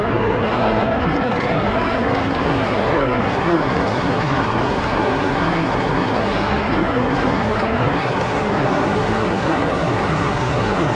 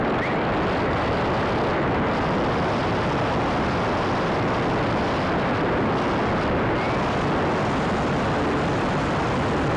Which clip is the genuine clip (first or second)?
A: second